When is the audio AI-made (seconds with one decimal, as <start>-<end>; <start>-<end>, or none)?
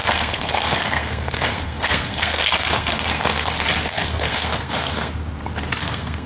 0.0-3.5; 3.9-5.1; 5.8-6.3